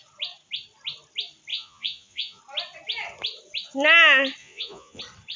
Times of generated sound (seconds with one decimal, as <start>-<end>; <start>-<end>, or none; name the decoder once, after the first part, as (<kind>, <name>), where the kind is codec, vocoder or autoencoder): 1.5-2.4 (vocoder, Vocos); 4.4-5.0